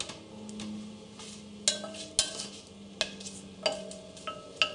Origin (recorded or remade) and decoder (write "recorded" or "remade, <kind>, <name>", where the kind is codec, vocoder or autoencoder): recorded